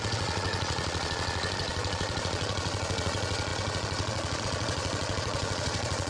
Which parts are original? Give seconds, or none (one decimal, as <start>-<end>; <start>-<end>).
none